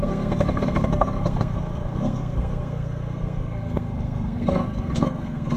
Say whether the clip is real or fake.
fake